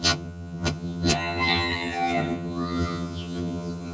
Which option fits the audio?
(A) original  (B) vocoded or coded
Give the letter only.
B